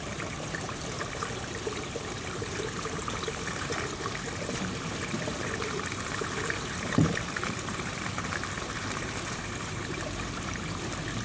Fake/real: fake